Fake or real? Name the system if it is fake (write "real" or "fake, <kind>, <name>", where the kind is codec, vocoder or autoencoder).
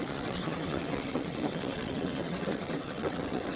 fake, vocoder, WaveNeXt